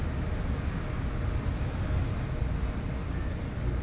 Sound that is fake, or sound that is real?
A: real